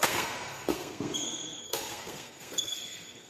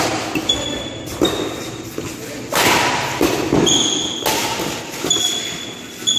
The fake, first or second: first